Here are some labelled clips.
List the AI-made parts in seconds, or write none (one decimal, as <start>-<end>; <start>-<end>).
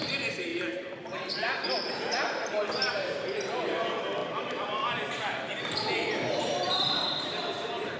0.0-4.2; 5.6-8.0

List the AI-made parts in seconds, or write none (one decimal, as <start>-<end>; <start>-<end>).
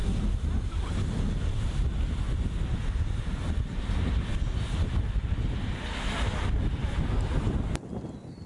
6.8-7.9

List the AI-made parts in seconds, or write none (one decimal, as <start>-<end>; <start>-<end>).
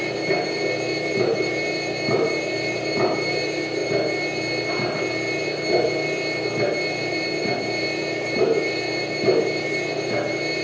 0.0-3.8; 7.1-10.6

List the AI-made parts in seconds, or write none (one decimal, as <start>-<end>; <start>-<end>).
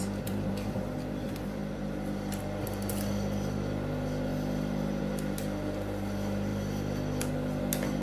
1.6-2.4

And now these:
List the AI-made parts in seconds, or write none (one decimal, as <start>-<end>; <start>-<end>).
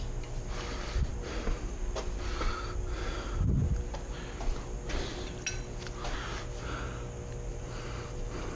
7.5-8.6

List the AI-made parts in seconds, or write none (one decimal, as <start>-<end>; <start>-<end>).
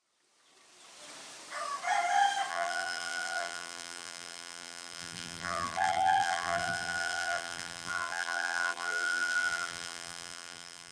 2.5-10.9